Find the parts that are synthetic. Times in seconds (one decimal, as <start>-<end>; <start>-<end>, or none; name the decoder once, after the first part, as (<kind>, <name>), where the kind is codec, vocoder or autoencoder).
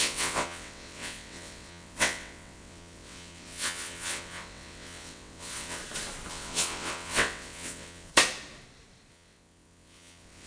0.0-5.8 (vocoder, WaveNeXt); 6.3-8.1; 9.1-10.5